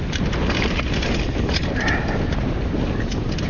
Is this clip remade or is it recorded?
recorded